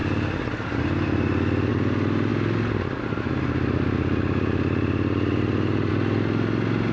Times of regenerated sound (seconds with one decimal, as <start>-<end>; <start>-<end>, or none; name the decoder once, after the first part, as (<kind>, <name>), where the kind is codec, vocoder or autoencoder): none